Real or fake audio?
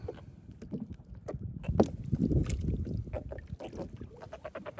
real